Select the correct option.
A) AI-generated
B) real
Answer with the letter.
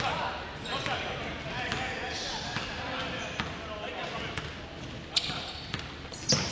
B